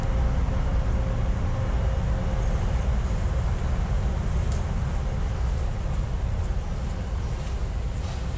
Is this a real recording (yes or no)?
yes